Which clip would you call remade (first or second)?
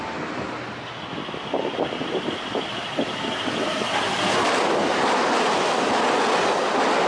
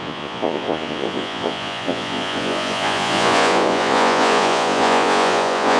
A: second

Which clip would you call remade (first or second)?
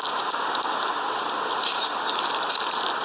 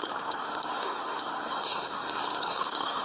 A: second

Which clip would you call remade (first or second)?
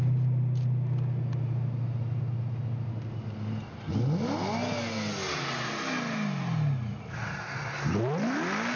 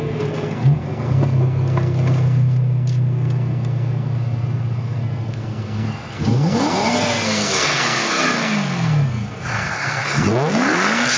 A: second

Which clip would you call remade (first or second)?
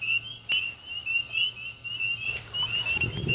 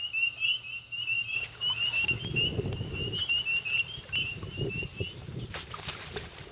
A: second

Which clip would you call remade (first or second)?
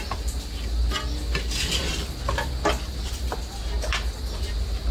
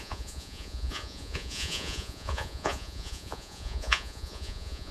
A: second